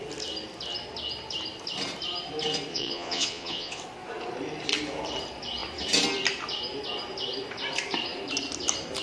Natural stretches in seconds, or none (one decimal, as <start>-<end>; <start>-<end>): 0.0-2.7; 3.8-9.0